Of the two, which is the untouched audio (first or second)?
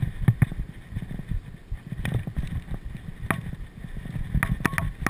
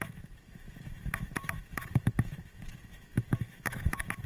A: first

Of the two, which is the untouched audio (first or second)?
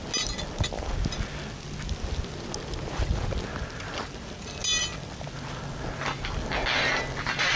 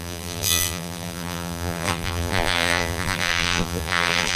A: first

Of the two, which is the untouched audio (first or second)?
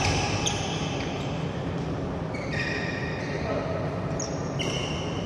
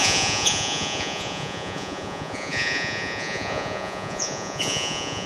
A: first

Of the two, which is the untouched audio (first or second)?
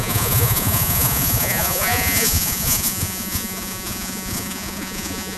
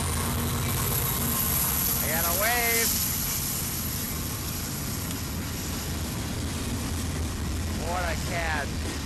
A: second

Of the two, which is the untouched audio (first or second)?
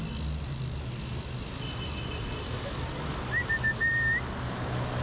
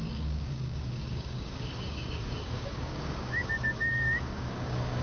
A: first